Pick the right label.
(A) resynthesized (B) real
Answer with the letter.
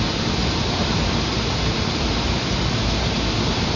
A